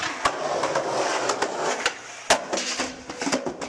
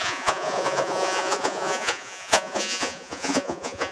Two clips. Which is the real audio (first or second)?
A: first